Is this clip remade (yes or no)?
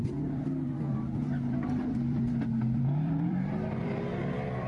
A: yes